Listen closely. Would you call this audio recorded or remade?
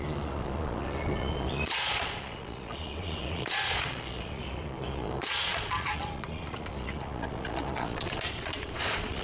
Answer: remade